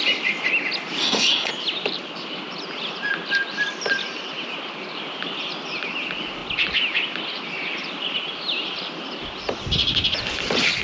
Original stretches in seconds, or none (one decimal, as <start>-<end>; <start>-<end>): 0.0-1.0; 1.5-10.8